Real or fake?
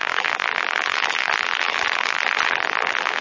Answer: fake